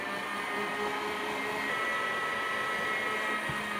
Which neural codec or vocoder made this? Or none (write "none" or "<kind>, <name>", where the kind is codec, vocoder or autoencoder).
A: none